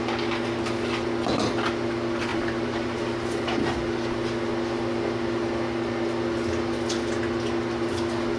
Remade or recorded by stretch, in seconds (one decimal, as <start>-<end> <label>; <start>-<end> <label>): 0.0-2.3 recorded; 2.3-3.0 remade; 3.0-8.4 recorded